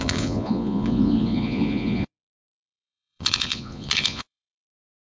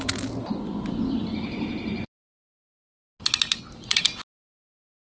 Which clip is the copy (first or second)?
first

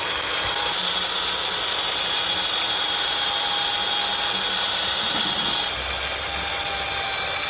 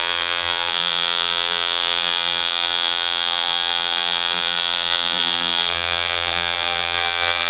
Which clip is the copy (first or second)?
second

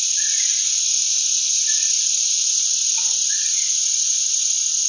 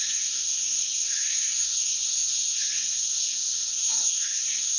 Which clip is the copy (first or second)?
second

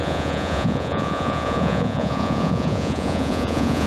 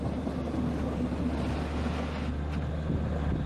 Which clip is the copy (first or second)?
first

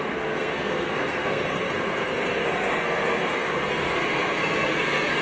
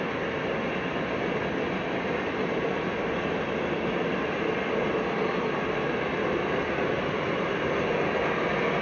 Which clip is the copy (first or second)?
first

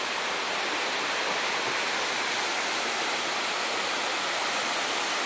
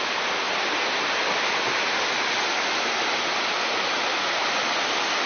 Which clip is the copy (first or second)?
first